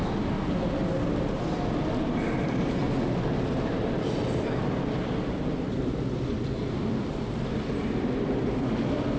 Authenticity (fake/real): real